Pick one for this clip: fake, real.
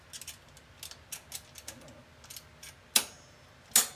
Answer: real